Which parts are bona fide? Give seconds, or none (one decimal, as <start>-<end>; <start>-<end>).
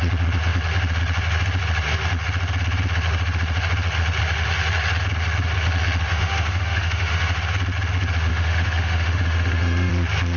0.0-6.1; 7.4-8.3; 9.9-10.4